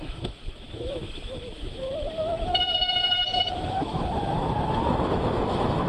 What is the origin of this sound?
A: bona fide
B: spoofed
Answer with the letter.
B